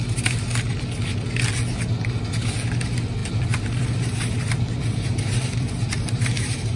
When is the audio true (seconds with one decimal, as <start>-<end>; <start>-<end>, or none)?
0.0-3.2